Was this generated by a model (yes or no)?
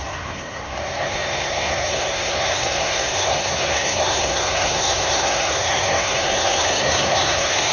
yes